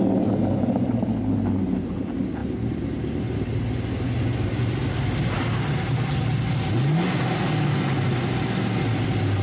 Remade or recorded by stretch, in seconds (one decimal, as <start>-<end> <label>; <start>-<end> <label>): 0.0-9.4 recorded